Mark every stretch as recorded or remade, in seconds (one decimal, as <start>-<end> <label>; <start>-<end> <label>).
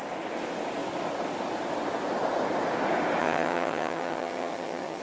0.0-3.2 recorded; 3.2-5.0 remade